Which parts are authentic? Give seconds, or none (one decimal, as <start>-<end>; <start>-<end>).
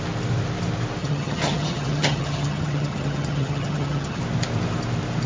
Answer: 0.0-1.0; 4.2-5.3